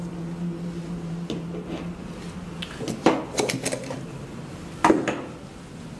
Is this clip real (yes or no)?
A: yes